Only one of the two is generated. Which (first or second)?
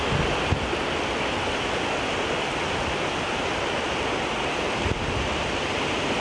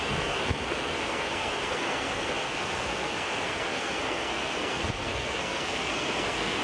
second